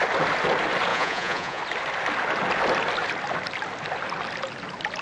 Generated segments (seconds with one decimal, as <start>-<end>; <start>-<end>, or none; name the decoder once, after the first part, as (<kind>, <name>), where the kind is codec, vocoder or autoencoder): 0.9-1.6 (vocoder, Vocos)